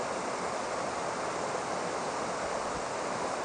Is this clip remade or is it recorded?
recorded